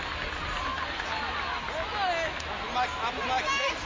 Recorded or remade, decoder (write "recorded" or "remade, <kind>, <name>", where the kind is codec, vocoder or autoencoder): recorded